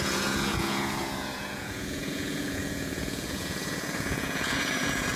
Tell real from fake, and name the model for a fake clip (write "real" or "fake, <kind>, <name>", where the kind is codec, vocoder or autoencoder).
fake, vocoder, Vocos